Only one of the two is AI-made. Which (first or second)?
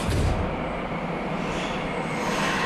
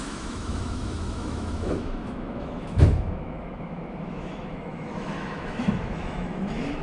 second